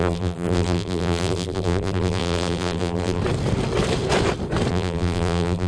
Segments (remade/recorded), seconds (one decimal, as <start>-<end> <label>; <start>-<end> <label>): 0.0-3.2 remade; 3.2-4.7 recorded; 4.7-5.7 remade

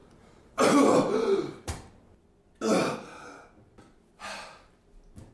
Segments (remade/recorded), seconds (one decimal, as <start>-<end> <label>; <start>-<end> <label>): 0.0-2.0 remade; 2.0-5.3 recorded

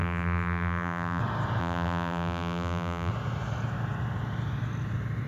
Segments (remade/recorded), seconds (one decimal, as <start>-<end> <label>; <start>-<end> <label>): 0.0-1.2 remade; 1.2-1.6 recorded; 1.6-3.1 remade; 3.1-5.3 recorded

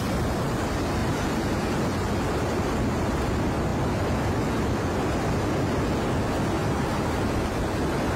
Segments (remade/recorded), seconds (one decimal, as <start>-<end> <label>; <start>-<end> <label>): 0.0-1.0 recorded; 1.0-1.7 remade; 1.7-6.6 recorded; 6.6-7.3 remade; 7.3-8.2 recorded